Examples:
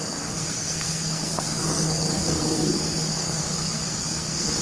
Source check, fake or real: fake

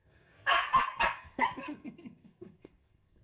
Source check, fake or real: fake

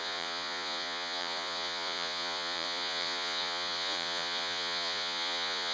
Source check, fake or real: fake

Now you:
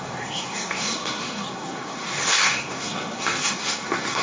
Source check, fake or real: fake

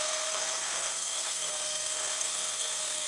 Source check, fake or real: fake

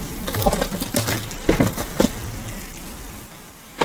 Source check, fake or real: real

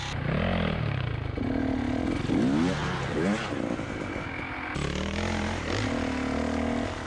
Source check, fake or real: real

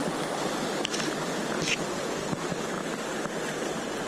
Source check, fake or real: real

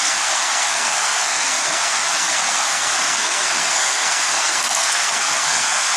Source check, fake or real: fake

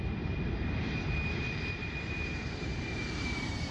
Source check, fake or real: fake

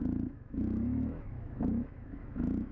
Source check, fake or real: fake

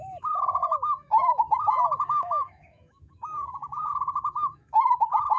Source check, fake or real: fake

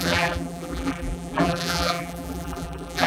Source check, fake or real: fake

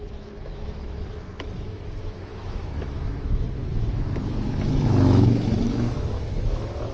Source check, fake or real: fake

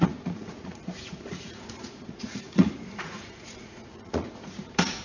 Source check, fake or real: fake